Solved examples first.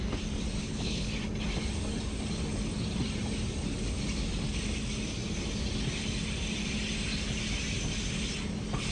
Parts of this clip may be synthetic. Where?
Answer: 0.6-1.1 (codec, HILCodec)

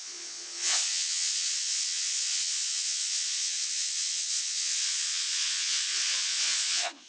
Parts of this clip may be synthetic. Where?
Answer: 0.0-7.1 (vocoder, Vocos)

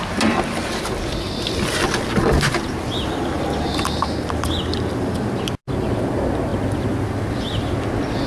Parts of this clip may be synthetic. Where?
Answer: none

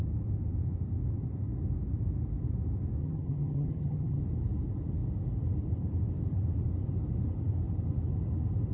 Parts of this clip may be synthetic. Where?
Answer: 3.0-4.2 (vocoder, HiFi-GAN)